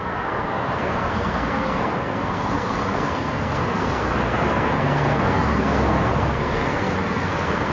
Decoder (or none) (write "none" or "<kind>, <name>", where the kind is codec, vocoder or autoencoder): codec, SNAC